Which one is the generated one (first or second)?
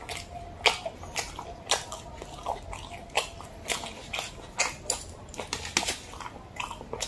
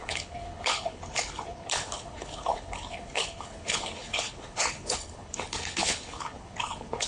second